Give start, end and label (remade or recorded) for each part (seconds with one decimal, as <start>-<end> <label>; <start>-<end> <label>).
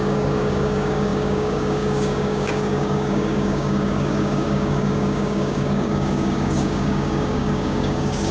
0.0-8.3 remade